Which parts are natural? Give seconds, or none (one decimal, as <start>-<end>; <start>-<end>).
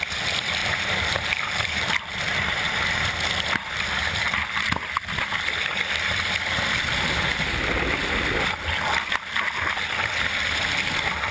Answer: 0.0-0.6; 3.1-11.3